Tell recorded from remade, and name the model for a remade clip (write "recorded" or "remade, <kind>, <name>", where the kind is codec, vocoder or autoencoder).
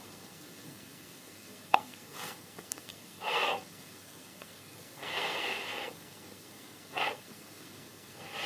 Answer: remade, codec, SNAC